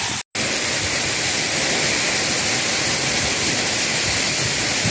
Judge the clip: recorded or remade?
recorded